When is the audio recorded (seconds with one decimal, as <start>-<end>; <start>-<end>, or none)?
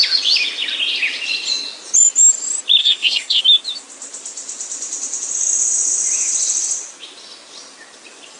0.0-2.8; 3.4-8.4